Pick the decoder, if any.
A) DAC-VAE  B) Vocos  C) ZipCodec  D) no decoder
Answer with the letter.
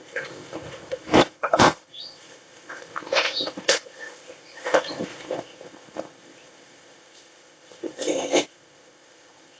C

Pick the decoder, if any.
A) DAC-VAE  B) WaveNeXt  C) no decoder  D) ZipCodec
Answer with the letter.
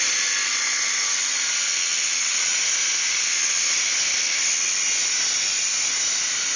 C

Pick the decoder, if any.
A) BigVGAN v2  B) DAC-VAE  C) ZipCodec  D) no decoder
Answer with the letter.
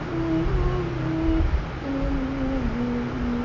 D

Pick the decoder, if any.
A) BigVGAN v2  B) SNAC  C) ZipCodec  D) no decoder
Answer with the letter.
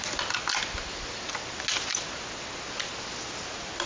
D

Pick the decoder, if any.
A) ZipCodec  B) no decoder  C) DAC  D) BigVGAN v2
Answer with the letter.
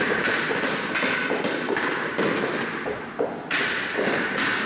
B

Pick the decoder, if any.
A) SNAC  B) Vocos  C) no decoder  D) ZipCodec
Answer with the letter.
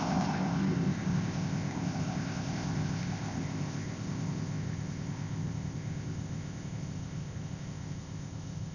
D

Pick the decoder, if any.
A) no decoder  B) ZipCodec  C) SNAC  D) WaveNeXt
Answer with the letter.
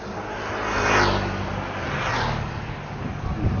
A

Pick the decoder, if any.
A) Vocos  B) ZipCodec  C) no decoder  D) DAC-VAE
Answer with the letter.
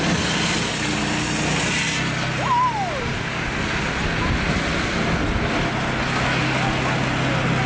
C